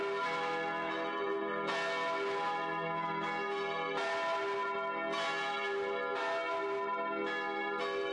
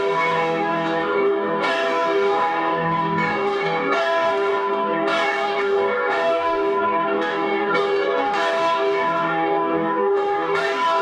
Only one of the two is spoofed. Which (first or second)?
second